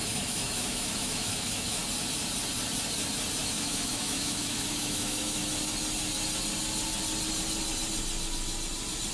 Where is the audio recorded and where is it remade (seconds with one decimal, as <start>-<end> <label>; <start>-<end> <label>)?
0.0-1.8 remade; 1.8-3.4 recorded; 3.4-5.4 remade; 5.4-9.1 recorded

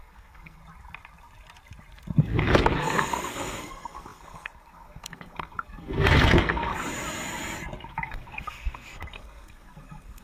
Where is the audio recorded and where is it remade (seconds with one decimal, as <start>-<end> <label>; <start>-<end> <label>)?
0.0-0.6 remade; 0.6-2.2 recorded; 2.2-6.7 remade; 6.7-7.9 recorded; 7.9-10.2 remade